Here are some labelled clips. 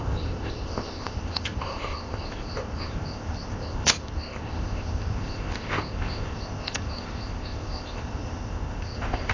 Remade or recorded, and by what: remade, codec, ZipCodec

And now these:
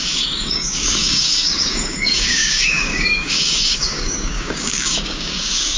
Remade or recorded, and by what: remade, codec, DAC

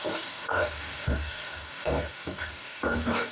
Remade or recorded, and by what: remade, codec, DAC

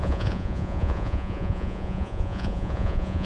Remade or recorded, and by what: remade, vocoder, Vocos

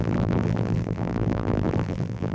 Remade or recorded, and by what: remade, vocoder, BigVGAN v2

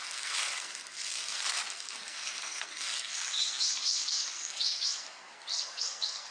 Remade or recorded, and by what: remade, codec, SNAC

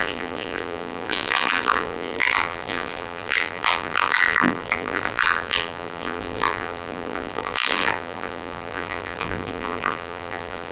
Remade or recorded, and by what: remade, vocoder, BigVGAN v2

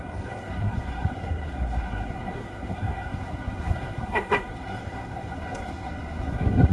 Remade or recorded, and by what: remade, codec, SNAC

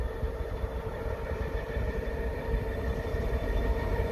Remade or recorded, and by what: remade, vocoder, BigVGAN v2